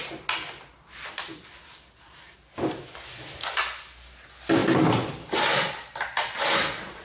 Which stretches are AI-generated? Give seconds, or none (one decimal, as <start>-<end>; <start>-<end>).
none